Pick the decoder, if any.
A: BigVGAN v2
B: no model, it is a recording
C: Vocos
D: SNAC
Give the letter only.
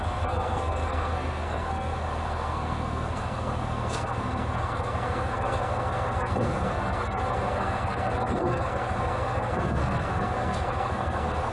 D